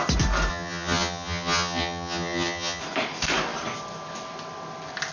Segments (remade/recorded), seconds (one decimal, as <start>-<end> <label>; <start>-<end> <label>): 0.0-0.5 recorded; 0.5-2.8 remade; 2.8-5.1 recorded